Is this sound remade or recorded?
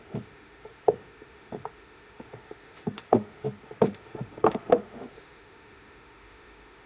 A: remade